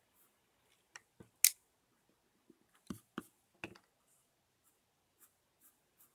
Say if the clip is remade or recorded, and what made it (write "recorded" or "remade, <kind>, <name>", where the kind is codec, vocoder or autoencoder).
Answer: recorded